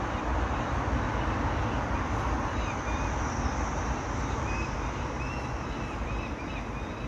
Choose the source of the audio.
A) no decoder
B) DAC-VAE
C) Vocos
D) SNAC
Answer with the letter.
A